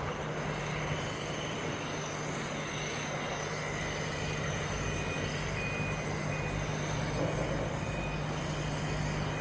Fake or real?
real